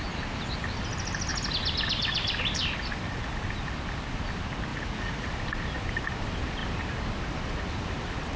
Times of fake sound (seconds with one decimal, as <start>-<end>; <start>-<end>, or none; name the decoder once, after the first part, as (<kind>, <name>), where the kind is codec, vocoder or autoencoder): 4.7-5.3 (vocoder, Vocos)